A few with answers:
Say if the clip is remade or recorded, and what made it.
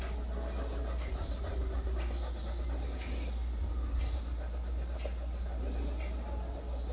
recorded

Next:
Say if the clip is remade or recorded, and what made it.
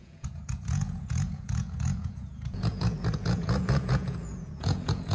remade, vocoder, Vocos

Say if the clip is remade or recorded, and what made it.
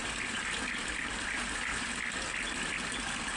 recorded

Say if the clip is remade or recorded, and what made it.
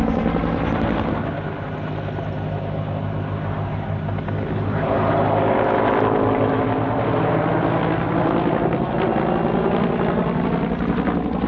recorded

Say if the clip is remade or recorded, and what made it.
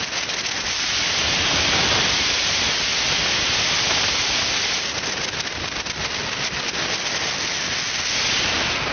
recorded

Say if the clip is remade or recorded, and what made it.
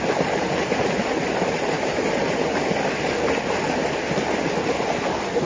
recorded